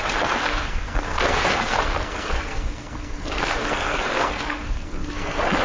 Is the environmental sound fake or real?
fake